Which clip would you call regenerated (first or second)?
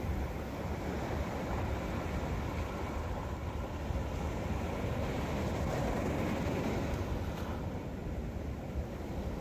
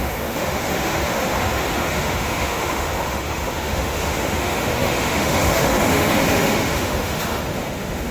second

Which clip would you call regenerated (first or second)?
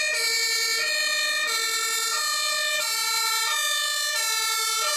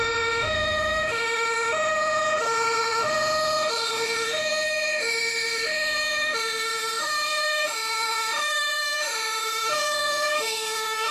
second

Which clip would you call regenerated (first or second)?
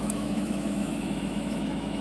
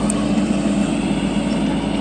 first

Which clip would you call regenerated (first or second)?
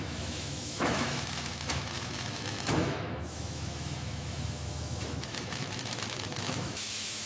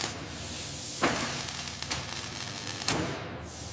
first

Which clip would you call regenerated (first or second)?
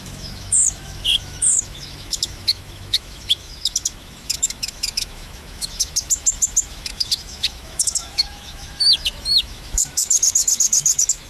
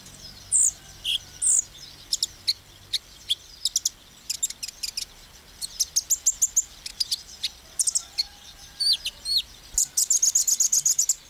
first